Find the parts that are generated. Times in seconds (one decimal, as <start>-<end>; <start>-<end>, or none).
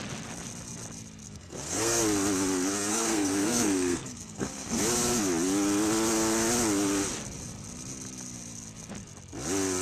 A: 1.2-2.0; 2.9-4.8